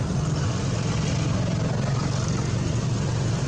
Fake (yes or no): no